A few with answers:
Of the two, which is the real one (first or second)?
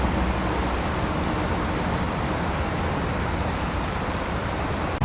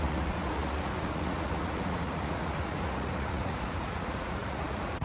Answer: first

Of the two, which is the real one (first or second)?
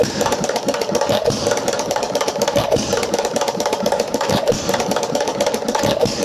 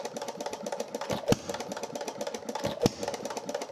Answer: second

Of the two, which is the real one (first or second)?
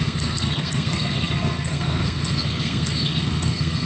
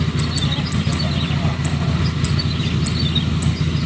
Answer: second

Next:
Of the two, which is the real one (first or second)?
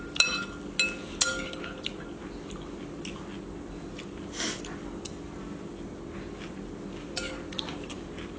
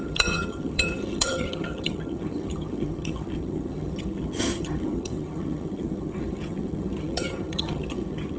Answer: first